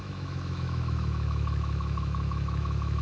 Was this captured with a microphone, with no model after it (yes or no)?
no